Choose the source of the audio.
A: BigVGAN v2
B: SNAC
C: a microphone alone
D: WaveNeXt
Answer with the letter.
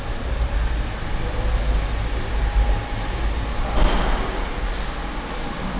C